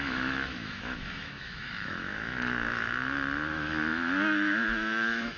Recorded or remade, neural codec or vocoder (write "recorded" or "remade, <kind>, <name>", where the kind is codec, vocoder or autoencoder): remade, autoencoder, DAC-VAE